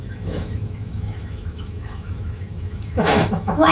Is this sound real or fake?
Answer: fake